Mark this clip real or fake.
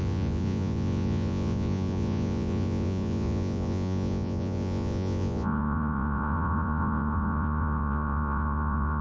fake